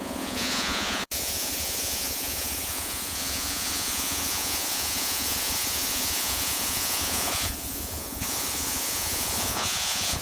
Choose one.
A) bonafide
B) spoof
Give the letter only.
B